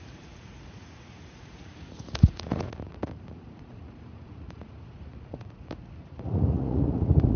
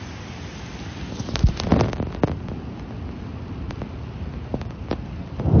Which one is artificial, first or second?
first